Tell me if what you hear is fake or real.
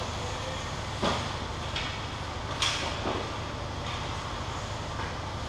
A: real